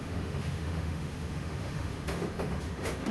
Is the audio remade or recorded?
remade